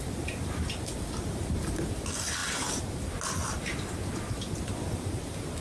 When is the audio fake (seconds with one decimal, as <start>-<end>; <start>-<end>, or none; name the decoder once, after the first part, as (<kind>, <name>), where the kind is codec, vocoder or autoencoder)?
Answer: none